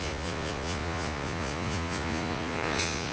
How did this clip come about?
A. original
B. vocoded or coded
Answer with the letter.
B